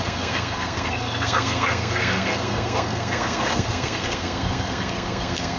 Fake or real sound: fake